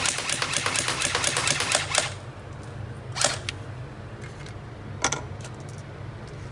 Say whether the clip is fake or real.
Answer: real